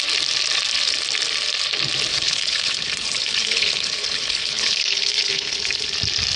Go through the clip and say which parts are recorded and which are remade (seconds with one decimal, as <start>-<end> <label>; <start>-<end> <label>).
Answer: 0.0-2.1 recorded; 2.1-5.9 remade; 5.9-6.4 recorded